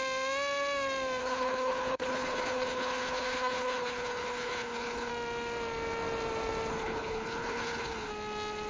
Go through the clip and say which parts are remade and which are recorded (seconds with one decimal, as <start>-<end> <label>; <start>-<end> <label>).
0.0-1.2 recorded; 1.2-5.1 remade; 5.1-6.7 recorded; 6.7-8.1 remade; 8.1-8.7 recorded